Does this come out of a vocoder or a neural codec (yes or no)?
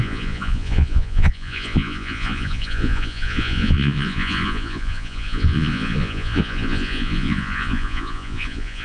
yes